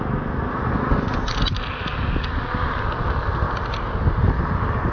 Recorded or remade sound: recorded